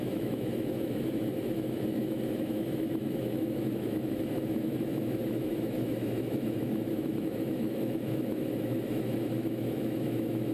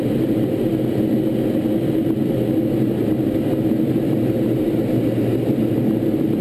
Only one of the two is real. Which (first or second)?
second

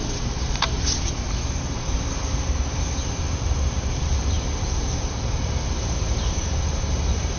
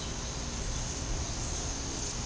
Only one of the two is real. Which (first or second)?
second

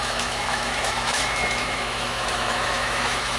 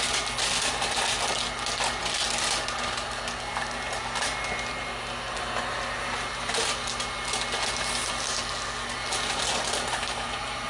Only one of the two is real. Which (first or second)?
second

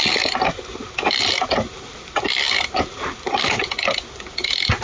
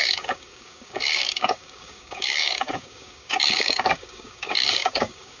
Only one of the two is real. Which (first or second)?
first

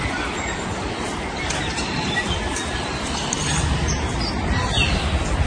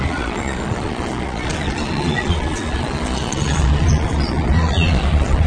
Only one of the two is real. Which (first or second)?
first